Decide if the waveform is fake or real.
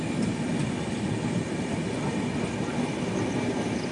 real